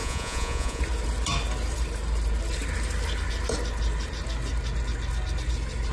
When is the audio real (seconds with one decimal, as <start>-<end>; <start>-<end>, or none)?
0.8-5.9